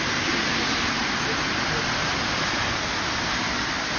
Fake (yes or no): no